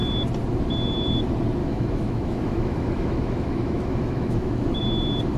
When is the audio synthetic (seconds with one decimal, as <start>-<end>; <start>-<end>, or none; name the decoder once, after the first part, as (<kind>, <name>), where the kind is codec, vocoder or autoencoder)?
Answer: 1.6-4.8 (autoencoder, DAC-VAE)